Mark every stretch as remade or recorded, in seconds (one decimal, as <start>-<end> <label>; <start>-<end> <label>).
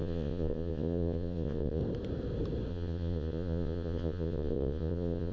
0.0-1.8 remade; 1.8-2.7 recorded; 2.7-5.3 remade